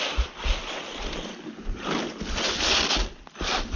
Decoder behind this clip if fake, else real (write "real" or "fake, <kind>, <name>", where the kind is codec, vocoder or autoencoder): real